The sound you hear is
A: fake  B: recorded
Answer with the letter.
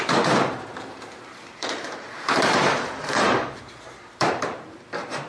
A